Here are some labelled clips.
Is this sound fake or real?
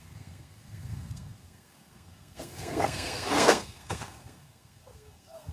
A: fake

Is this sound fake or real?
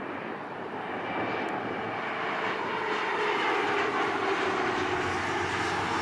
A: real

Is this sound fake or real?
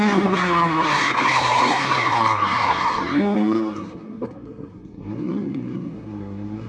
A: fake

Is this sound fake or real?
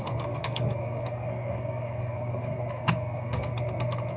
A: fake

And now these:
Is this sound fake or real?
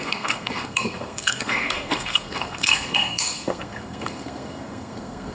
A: fake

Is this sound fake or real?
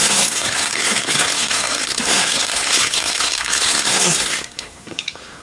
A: fake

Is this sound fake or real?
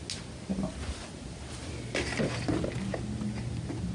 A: real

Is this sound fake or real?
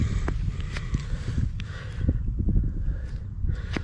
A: real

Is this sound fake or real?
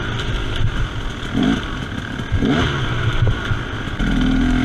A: real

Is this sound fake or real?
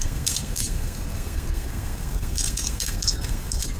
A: fake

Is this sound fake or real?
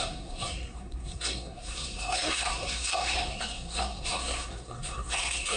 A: fake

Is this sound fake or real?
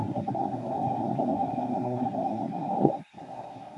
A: fake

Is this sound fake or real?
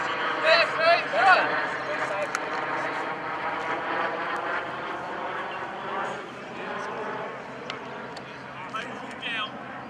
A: real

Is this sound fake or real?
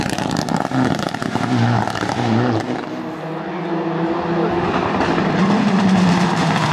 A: real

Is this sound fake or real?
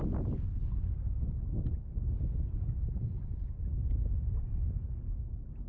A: real